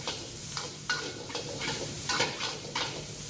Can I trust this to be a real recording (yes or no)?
no